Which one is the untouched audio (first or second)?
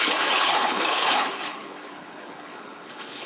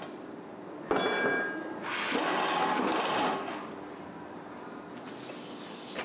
second